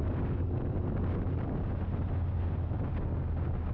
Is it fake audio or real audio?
real